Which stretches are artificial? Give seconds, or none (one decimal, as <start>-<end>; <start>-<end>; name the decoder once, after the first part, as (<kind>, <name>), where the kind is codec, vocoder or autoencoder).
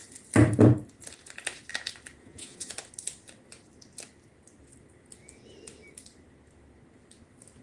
2.2-2.7 (vocoder, Vocos)